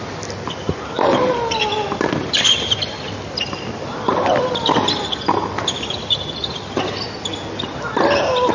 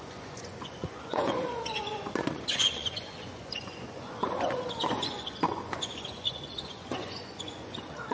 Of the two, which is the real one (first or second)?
first